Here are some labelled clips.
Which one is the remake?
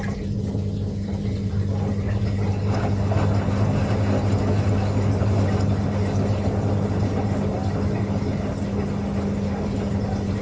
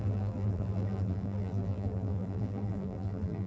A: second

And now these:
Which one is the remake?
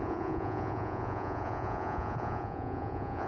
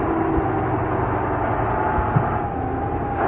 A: first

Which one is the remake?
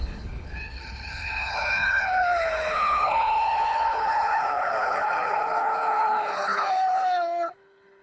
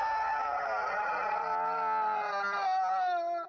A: first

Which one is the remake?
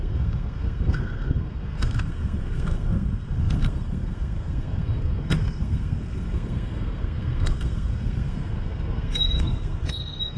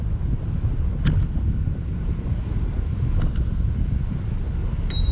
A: first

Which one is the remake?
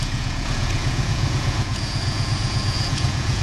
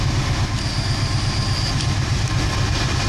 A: first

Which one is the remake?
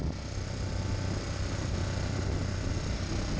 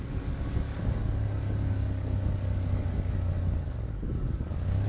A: second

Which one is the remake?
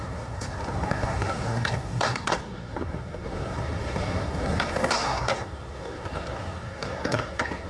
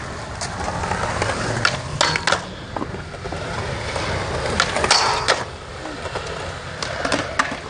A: first